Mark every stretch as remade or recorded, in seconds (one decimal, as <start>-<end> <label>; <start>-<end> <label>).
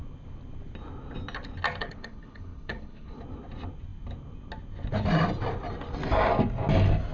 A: 0.0-1.8 recorded; 1.8-3.2 remade; 3.2-7.1 recorded